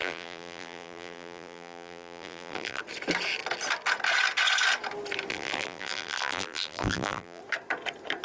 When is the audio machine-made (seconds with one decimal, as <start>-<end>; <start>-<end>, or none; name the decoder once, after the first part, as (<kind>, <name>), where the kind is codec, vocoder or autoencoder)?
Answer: 0.0-2.8 (vocoder, BigVGAN v2); 5.3-7.4